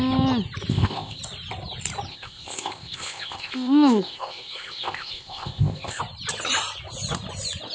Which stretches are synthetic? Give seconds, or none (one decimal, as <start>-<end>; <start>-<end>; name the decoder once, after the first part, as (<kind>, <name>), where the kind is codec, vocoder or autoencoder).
0.7-1.2 (codec, ZipCodec); 2.1-6.0